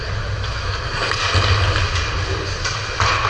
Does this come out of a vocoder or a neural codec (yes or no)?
no